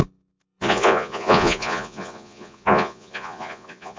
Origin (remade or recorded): remade